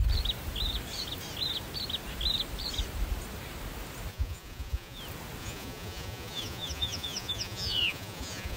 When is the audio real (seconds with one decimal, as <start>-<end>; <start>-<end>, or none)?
0.0-4.1; 5.0-5.4